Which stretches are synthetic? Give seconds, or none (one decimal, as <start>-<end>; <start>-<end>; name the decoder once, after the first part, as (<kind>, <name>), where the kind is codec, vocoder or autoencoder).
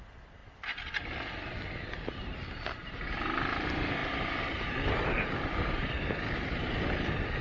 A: none